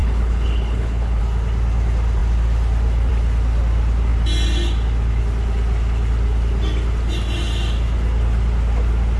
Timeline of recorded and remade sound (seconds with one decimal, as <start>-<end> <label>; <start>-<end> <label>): 0.0-1.2 remade; 1.2-9.2 recorded